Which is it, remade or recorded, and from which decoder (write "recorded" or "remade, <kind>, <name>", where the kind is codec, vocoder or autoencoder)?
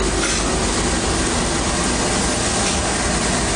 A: recorded